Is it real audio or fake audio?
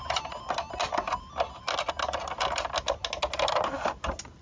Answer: real